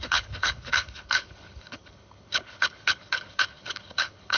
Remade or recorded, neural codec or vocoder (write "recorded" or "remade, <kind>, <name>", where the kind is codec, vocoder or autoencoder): remade, codec, HILCodec